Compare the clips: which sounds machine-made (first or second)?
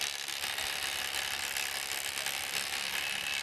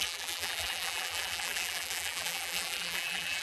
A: second